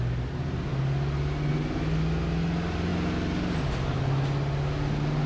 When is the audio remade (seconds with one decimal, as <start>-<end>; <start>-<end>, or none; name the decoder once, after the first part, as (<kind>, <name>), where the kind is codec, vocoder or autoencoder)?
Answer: none